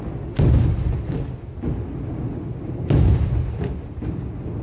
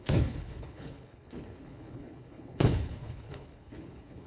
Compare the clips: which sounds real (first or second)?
first